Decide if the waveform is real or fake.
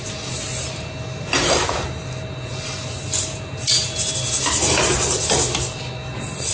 real